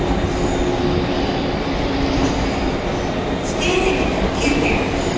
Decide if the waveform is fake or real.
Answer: real